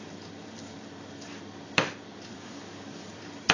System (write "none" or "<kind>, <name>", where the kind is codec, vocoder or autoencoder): vocoder, BigVGAN v2